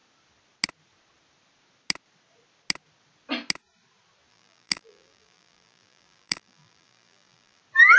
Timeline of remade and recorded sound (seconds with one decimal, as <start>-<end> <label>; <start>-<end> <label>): 0.0-4.3 recorded; 4.3-7.6 remade; 7.6-8.0 recorded